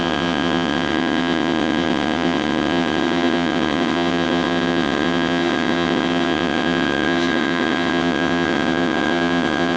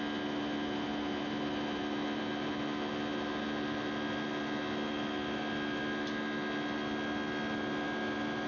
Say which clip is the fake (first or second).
first